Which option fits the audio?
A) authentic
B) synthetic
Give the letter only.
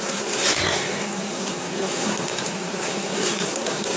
B